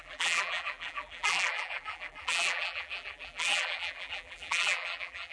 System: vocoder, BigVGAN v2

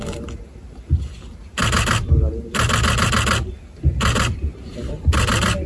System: none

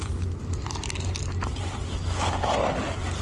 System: none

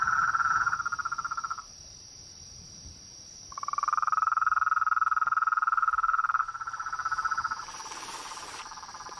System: vocoder, BigVGAN v2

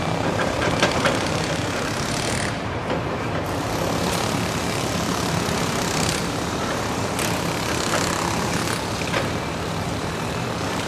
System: vocoder, BigVGAN v2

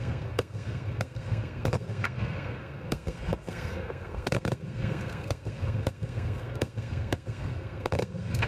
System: codec, SNAC